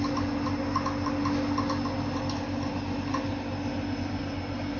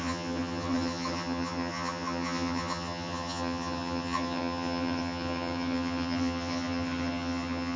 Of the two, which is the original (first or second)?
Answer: first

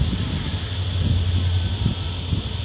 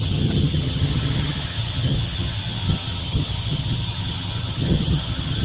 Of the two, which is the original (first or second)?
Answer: first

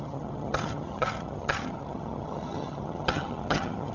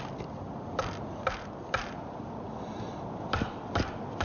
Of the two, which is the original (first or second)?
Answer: second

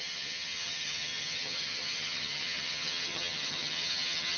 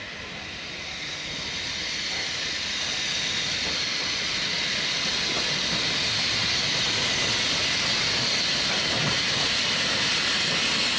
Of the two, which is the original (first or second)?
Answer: second